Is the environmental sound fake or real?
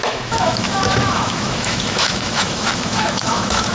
fake